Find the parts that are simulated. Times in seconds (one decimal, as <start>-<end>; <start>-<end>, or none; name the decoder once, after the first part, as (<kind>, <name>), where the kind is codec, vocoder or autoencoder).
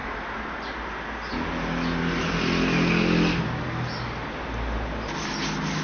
0.0-0.5 (vocoder, BigVGAN v2)